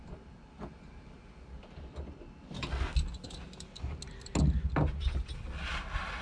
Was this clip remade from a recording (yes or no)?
no